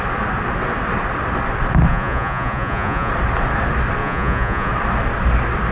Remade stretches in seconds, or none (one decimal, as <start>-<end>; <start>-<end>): 1.9-3.1; 4.0-4.7